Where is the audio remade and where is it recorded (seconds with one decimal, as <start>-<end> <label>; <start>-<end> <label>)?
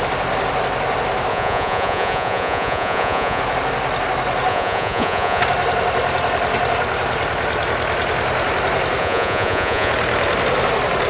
0.0-1.3 recorded; 1.3-3.4 remade; 3.4-4.5 recorded; 4.5-5.4 remade; 5.4-9.0 recorded; 9.0-9.9 remade; 9.9-11.1 recorded